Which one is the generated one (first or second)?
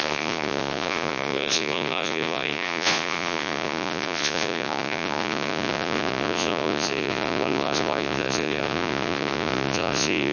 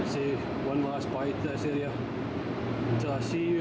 first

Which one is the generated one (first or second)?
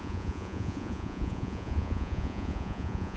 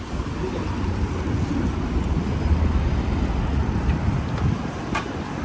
first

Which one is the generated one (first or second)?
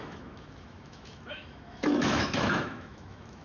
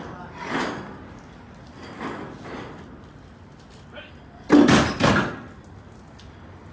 first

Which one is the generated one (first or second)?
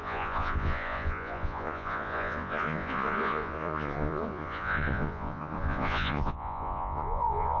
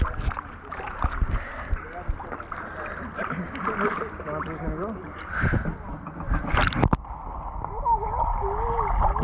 first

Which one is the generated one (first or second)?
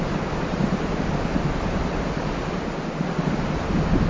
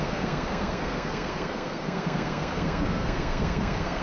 second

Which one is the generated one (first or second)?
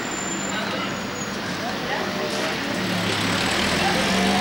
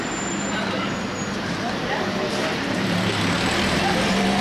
second